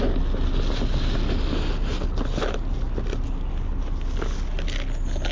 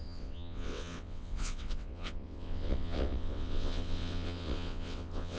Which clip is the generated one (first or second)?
second